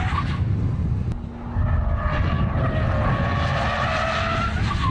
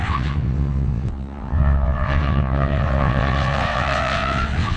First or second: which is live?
first